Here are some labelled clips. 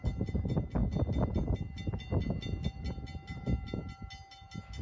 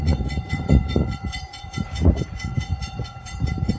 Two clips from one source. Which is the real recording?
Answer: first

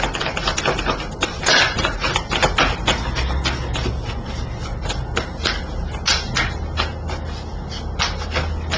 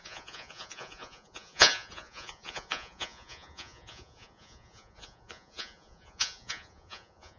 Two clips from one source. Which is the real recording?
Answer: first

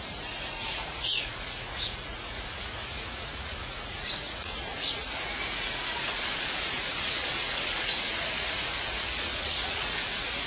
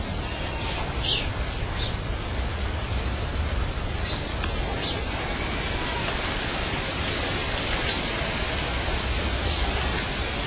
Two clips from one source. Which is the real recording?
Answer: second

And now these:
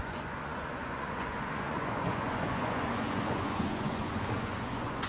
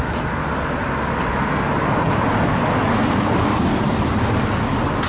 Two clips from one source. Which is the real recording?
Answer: second